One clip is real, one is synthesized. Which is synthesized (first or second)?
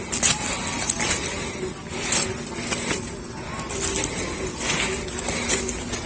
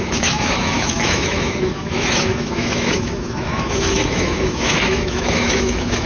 second